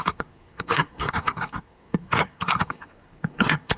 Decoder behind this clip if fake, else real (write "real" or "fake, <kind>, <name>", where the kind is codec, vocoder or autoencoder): fake, codec, SNAC